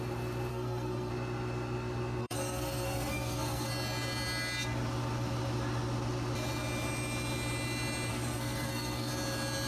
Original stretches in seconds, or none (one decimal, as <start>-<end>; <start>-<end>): 0.0-0.5; 1.1-2.2; 3.7-8.1; 9.1-9.7

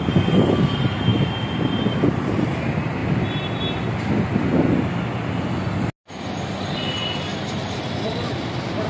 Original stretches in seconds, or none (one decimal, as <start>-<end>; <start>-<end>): 0.0-1.1; 2.5-7.3; 8.1-8.9